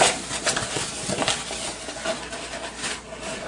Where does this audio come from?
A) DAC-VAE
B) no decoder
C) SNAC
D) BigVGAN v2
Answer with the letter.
B